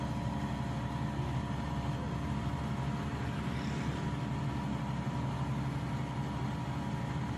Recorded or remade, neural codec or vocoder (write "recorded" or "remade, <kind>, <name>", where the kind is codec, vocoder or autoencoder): recorded